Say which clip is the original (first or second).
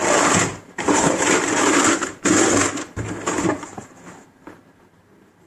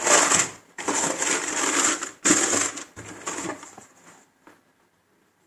second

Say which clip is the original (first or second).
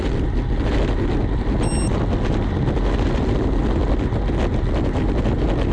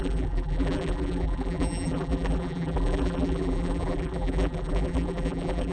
first